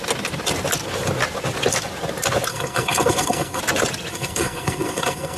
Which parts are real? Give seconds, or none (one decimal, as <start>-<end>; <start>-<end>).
0.0-2.5; 3.6-4.1